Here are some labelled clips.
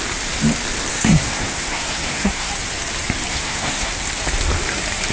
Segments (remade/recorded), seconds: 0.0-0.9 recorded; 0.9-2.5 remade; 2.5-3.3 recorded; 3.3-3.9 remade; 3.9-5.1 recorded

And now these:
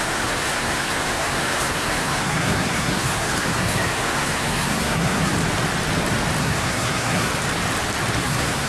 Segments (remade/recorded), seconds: 0.0-5.3 remade; 5.3-6.4 recorded; 6.4-7.3 remade; 7.3-8.2 recorded; 8.2-8.7 remade

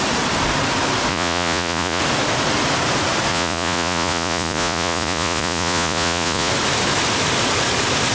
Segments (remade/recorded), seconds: 0.0-1.1 recorded; 1.1-2.0 remade; 2.0-3.3 recorded; 3.3-6.5 remade; 6.5-8.1 recorded

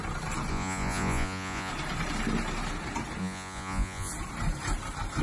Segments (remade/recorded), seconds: 0.0-0.5 recorded; 0.5-1.7 remade; 1.7-3.2 recorded; 3.2-4.1 remade; 4.1-5.2 recorded

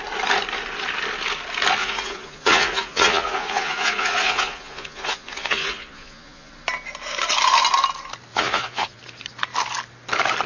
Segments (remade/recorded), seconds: 0.0-1.8 recorded; 1.8-6.5 remade; 6.5-8.3 recorded; 8.3-9.0 remade; 9.0-10.5 recorded